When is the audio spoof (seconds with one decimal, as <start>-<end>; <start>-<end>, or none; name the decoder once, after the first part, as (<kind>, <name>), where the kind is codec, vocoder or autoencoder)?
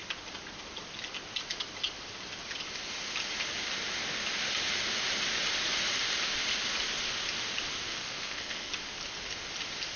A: 7.9-8.7 (codec, SNAC)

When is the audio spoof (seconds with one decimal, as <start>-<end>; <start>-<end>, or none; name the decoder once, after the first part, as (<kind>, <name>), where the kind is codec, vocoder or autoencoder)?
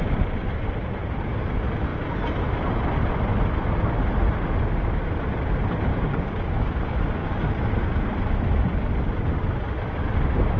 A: 5.9-6.7 (codec, DAC)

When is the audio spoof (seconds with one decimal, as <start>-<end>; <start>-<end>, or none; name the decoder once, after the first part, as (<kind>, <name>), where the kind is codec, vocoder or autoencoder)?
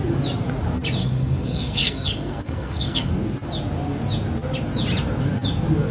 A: 1.0-3.1 (codec, SNAC)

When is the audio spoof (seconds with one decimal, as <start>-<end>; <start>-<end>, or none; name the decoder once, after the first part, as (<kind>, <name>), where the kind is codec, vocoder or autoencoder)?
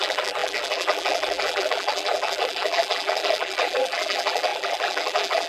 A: 0.0-5.5 (vocoder, BigVGAN v2)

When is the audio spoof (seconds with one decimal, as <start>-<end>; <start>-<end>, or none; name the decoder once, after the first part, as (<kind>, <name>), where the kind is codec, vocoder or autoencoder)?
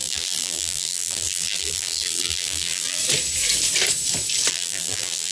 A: 0.0-3.0 (vocoder, BigVGAN v2); 4.5-5.3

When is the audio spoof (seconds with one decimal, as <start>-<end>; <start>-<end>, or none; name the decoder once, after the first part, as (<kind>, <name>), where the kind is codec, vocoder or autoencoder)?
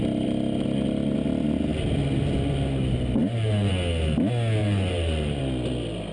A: 3.2-3.7 (vocoder, BigVGAN v2); 4.6-5.4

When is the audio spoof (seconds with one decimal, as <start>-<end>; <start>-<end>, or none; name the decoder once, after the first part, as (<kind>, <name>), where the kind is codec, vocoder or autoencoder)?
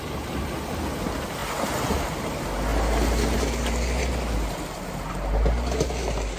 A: none